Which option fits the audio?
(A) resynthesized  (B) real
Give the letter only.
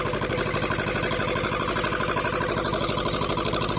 B